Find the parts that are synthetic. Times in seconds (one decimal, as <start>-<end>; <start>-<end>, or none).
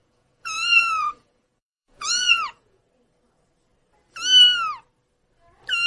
0.0-2.8